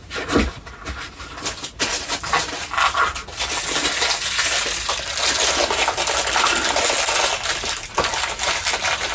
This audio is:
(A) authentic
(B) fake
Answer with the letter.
A